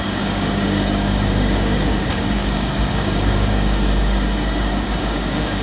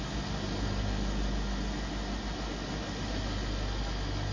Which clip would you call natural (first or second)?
second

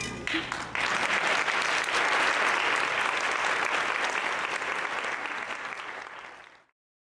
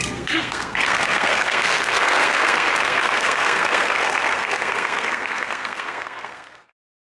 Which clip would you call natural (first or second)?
first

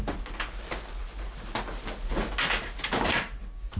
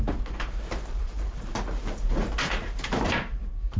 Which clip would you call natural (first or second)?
first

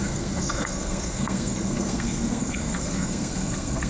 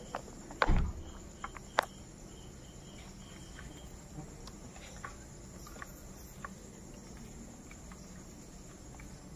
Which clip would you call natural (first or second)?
second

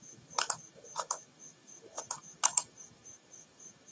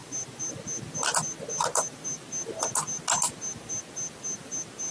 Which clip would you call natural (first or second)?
second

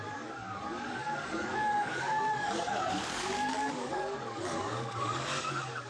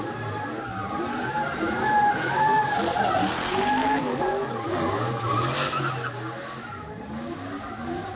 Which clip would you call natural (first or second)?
second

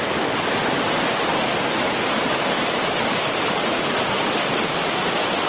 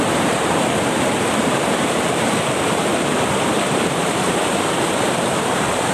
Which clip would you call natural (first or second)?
first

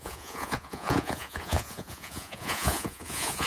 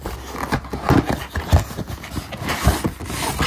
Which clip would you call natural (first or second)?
second